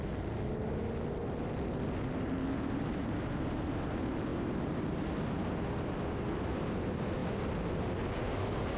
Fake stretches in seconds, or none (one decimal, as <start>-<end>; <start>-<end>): none